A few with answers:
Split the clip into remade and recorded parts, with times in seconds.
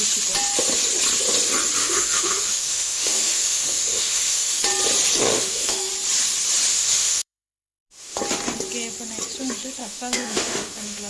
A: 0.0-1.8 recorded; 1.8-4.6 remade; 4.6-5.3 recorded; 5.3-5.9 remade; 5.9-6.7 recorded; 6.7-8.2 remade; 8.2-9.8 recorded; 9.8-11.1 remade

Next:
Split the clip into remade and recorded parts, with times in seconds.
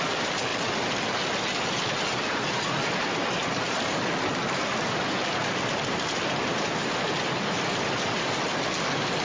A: 0.0-9.2 recorded